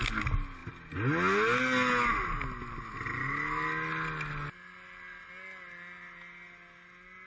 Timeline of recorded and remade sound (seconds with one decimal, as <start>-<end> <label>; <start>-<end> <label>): 0.0-7.3 recorded